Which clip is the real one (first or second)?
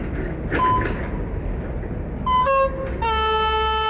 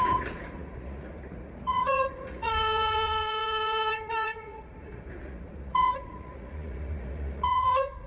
first